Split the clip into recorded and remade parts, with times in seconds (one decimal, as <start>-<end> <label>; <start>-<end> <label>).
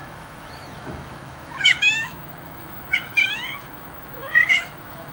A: 0.0-5.1 remade